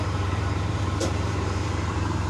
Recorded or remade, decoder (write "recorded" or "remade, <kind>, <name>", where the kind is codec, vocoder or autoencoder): remade, vocoder, BigVGAN v2